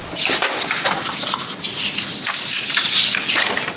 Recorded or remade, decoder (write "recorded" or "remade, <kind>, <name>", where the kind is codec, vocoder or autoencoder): recorded